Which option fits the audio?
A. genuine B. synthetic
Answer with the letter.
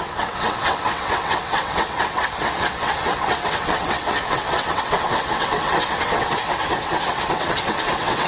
B